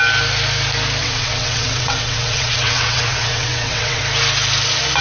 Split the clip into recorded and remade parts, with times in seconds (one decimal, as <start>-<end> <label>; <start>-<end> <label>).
0.0-1.0 recorded; 1.0-4.0 remade; 4.0-5.0 recorded